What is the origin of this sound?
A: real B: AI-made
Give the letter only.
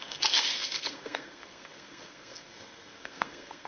B